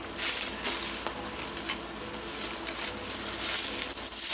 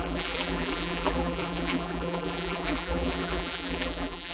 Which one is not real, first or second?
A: second